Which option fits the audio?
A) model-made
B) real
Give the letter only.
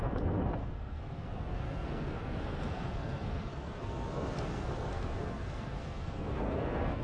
A